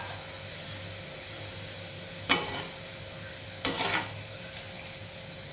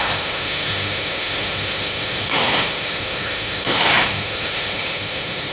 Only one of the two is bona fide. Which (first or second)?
first